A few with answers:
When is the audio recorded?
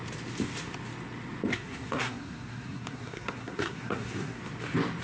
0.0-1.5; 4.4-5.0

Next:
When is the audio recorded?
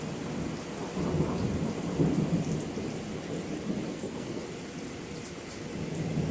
0.0-3.9; 4.4-6.3